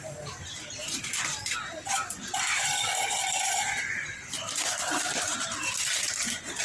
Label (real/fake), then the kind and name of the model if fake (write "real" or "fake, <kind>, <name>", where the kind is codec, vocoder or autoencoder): fake, vocoder, BigVGAN v2